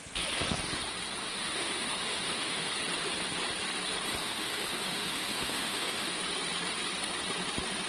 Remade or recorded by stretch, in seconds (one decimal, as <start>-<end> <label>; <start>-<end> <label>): 0.0-1.2 recorded; 1.2-2.7 remade; 2.7-4.2 recorded; 4.2-6.2 remade; 6.2-7.9 recorded